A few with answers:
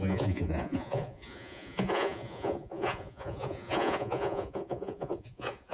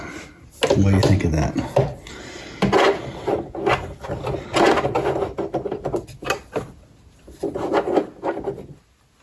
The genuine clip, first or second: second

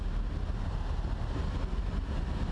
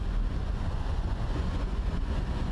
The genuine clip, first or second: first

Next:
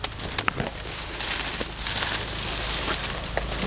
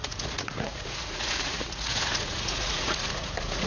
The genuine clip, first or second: first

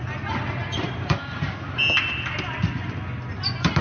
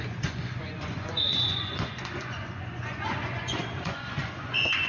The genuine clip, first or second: first